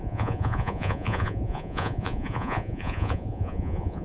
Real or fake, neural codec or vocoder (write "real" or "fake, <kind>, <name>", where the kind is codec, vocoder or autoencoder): fake, vocoder, Vocos